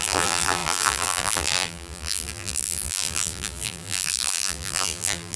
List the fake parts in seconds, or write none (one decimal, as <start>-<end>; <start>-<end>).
0.0-5.4